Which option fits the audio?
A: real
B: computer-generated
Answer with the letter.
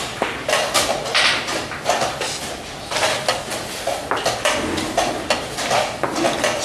A